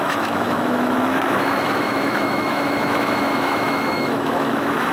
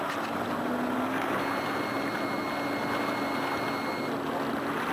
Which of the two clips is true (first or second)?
second